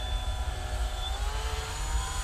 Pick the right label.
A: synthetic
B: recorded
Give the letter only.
A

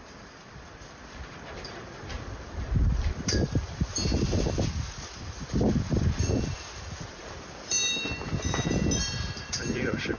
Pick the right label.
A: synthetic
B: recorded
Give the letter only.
A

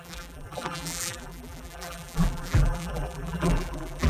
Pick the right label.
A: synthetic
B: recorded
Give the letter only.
A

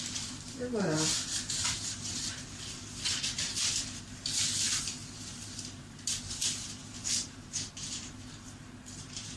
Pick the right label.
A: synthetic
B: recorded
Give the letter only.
A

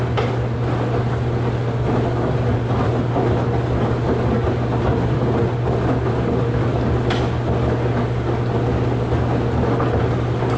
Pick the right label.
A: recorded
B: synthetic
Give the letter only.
A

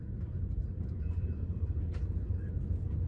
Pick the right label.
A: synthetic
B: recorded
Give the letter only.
A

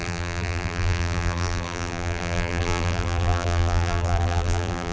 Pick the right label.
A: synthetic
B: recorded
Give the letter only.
A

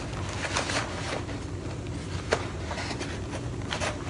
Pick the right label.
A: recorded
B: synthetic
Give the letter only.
A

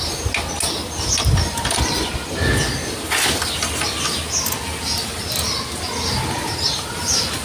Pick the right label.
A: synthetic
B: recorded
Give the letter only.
B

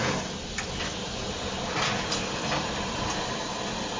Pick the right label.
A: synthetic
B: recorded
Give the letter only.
B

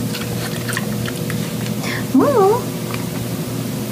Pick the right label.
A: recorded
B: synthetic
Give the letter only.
A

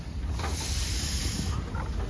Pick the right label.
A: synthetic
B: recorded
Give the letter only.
B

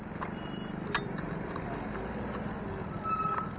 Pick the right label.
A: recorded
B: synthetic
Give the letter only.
A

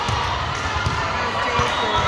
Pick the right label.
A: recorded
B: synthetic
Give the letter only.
A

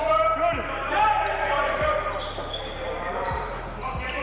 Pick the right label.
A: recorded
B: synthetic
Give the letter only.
A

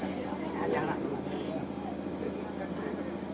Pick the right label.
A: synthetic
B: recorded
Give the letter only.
B